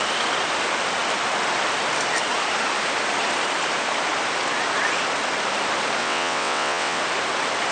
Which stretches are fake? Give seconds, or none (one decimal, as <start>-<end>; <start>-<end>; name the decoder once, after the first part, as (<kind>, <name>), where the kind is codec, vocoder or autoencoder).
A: 6.0-7.0 (vocoder, WaveNeXt)